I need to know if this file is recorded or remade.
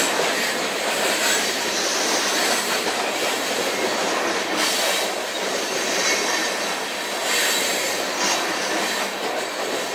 recorded